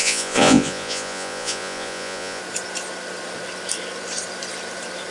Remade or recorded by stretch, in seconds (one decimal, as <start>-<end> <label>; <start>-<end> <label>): 0.0-2.4 remade; 2.4-5.1 recorded